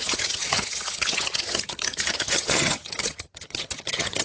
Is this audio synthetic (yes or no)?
yes